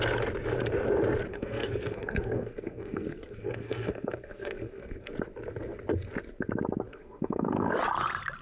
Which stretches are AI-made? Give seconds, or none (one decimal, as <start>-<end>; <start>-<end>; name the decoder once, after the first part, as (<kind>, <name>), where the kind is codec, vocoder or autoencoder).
1.3-5.1 (codec, SNAC); 6.9-7.7